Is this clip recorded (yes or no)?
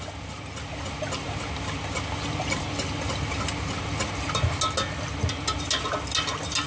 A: yes